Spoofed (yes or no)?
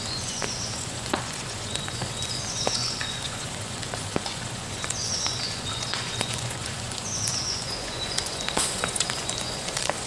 yes